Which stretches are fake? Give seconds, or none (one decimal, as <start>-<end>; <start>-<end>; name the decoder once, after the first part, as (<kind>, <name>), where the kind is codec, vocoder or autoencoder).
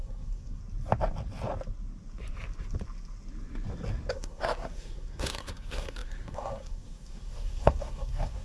0.0-0.6 (codec, SNAC); 4.1-8.4